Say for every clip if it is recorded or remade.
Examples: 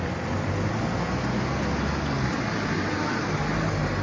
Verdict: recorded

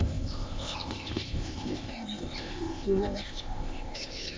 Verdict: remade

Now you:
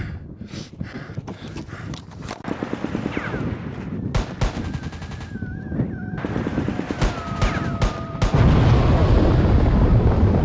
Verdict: recorded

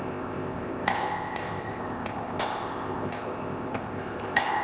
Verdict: remade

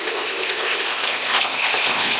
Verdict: remade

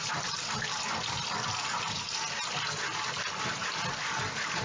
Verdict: recorded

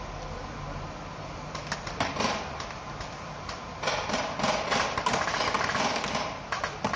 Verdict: recorded